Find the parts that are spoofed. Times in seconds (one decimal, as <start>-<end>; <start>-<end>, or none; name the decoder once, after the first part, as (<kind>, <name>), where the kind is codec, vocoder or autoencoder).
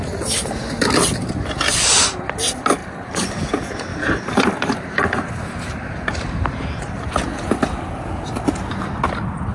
3.9-7.1 (vocoder, BigVGAN v2)